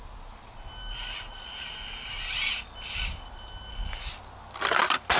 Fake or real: real